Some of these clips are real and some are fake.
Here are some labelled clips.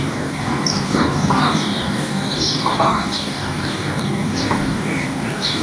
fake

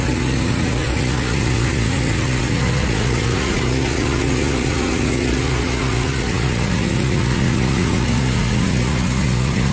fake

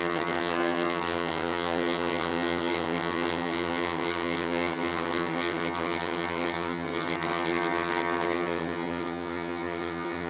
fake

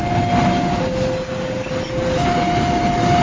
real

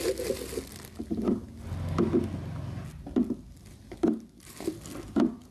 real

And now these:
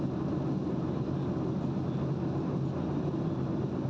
real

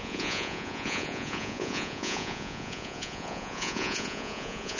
fake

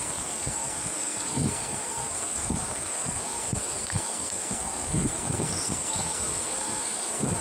fake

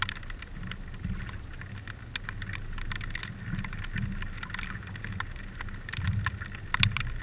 real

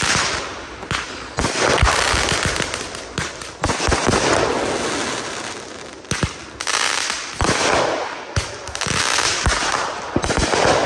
real